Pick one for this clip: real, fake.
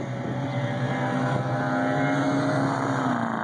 real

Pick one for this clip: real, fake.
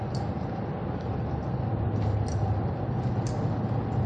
real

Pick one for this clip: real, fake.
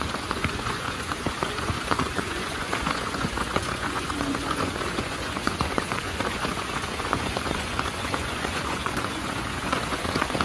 fake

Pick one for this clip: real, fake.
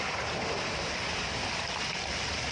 real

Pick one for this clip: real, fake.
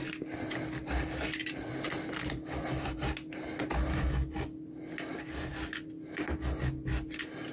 real